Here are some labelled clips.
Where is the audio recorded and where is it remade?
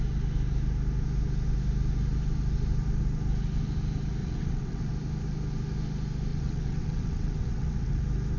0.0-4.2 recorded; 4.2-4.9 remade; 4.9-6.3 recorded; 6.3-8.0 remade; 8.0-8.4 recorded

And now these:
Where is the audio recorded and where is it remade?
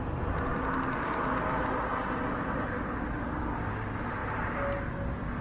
0.0-5.4 recorded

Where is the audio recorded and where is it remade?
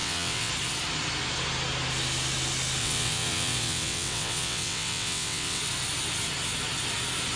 0.0-0.5 remade; 0.5-2.8 recorded; 2.8-5.6 remade; 5.6-7.4 recorded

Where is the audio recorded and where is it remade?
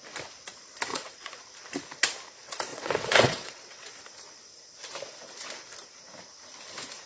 0.0-0.9 recorded; 0.9-1.4 remade; 1.4-2.7 recorded; 2.7-3.9 remade; 3.9-7.1 recorded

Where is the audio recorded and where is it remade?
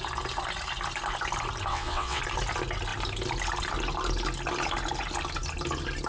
0.0-1.7 recorded; 1.7-2.2 remade; 2.2-6.1 recorded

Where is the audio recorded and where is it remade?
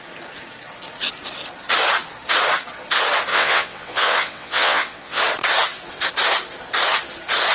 0.0-3.3 recorded; 3.3-5.2 remade; 5.2-7.5 recorded